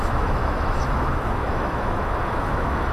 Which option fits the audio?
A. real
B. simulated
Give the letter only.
B